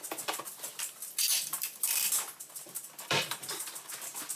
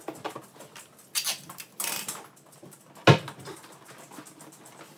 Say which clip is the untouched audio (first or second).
second